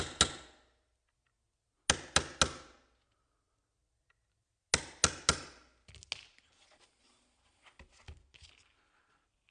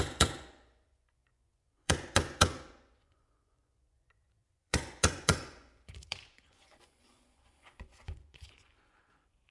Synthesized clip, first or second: second